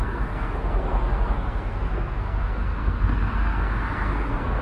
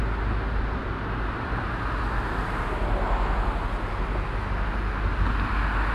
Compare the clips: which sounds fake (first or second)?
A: first